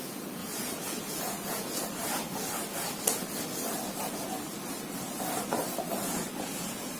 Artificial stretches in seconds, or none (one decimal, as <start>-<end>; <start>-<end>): 0.0-1.8; 5.9-7.0